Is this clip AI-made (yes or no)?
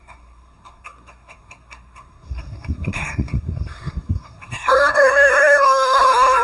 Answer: yes